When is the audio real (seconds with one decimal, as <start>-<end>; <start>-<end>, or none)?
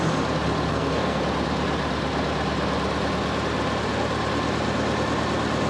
0.0-0.7; 1.2-5.7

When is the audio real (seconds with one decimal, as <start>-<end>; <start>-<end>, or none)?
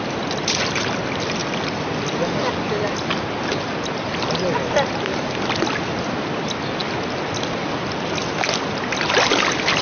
0.0-9.8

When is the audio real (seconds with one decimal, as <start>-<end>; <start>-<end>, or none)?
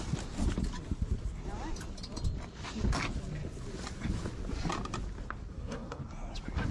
0.0-5.5; 6.0-6.7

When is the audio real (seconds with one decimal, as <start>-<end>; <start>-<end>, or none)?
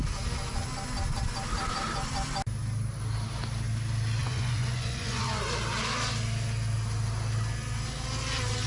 0.0-4.2; 5.4-8.7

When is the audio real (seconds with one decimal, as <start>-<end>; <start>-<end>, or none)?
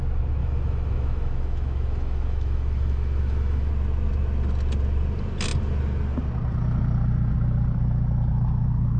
0.0-0.4; 3.7-9.0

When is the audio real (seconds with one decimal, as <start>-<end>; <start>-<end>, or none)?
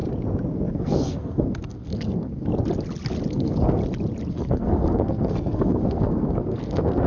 0.0-0.5; 2.5-3.3; 3.8-4.3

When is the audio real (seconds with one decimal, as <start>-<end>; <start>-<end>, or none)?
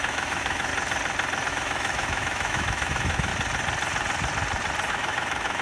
0.7-1.5; 3.3-4.9